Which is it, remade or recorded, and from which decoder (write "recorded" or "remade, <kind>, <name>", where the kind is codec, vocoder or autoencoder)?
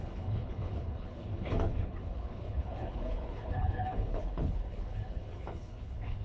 remade, codec, HILCodec